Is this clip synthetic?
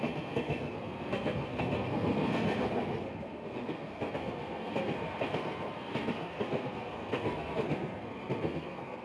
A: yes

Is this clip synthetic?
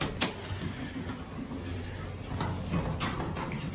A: no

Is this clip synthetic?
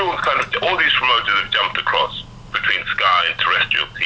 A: no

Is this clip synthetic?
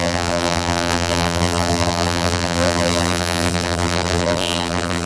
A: yes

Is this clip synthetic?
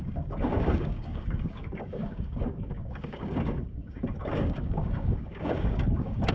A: yes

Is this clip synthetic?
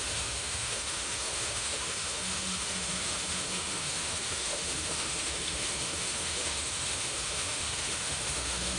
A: yes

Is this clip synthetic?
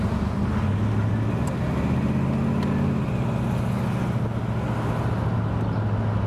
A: no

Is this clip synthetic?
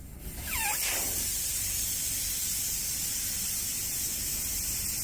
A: no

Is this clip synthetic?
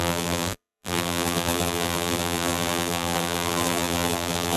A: yes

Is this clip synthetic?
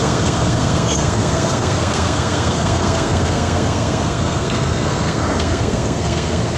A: yes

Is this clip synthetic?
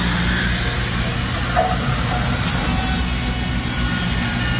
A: no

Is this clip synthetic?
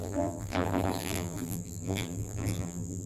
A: yes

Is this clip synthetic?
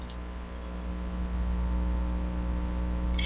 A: no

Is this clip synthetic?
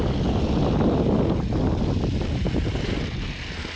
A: no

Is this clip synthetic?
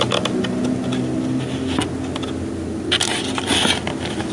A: no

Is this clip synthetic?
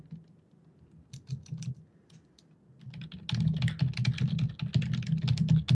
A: no